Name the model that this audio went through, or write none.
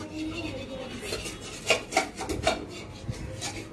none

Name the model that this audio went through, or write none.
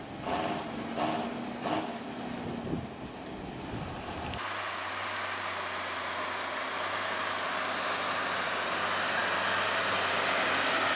none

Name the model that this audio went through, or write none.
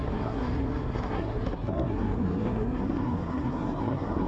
codec, SNAC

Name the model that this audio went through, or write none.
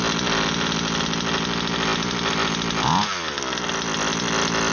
none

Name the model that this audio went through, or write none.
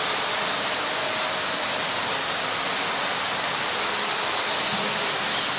none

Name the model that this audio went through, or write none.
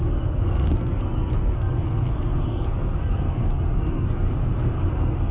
codec, SNAC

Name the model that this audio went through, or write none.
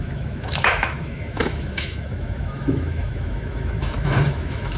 autoencoder, DAC-VAE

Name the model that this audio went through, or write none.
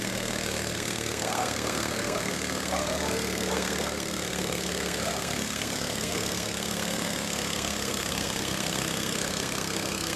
codec, SNAC